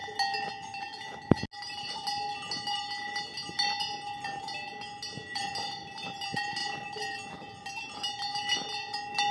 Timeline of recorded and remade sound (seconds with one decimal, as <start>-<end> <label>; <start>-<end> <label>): 0.0-9.3 recorded